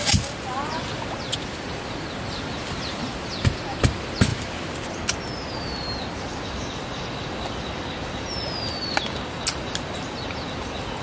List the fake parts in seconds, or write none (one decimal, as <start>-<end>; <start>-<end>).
none